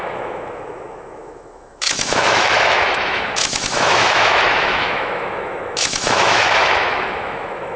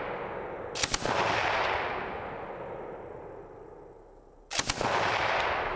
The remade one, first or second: first